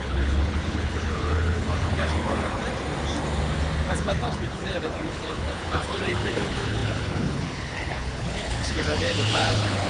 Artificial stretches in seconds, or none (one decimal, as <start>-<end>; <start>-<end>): 0.0-2.6; 3.9-9.9